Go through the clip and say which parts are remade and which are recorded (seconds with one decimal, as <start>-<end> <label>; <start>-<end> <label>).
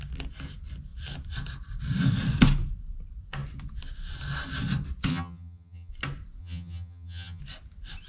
0.0-5.1 recorded; 5.1-5.9 remade; 5.9-6.4 recorded; 6.4-7.4 remade; 7.4-8.1 recorded